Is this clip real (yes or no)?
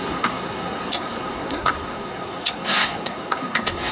no